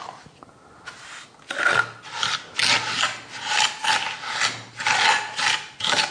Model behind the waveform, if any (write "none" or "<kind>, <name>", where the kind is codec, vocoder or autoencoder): none